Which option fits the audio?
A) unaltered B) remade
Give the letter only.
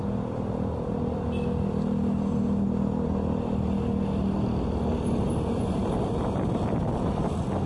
A